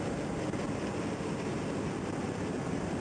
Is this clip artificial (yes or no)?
no